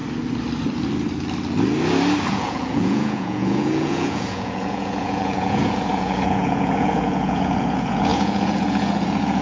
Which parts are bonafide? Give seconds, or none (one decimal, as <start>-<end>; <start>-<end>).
0.0-2.3